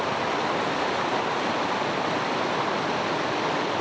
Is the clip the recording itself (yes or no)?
yes